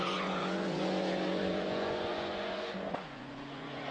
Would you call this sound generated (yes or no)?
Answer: yes